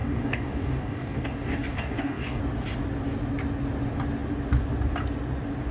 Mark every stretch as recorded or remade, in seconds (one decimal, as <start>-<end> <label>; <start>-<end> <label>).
0.0-2.4 remade; 2.4-5.7 recorded